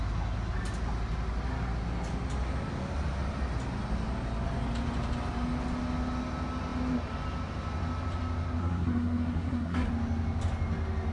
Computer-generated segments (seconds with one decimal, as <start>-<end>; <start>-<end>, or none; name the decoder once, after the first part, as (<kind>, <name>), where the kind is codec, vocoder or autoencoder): 8.6-9.9 (codec, SNAC)